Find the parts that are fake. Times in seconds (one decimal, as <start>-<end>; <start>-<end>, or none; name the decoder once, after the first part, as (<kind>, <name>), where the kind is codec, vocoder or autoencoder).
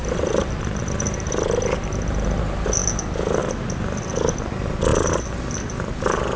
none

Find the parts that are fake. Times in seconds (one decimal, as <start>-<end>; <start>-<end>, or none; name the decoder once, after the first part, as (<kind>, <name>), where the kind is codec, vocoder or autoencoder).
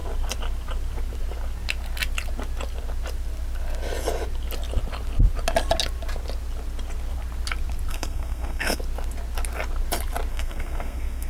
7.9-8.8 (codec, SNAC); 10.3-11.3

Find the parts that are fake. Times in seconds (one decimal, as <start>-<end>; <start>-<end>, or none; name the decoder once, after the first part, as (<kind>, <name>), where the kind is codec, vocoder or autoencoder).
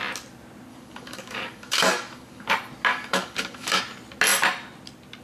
0.7-2.5 (codec, DAC); 2.9-3.8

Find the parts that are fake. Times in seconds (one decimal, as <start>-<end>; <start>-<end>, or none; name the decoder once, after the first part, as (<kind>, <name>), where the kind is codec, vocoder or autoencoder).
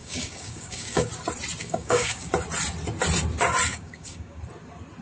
0.0-1.1 (codec, DAC); 1.6-2.3; 3.7-4.4